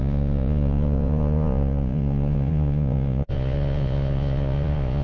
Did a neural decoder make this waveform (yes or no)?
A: yes